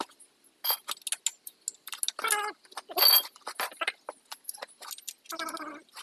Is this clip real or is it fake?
real